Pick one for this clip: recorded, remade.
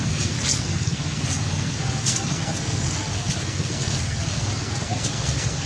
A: remade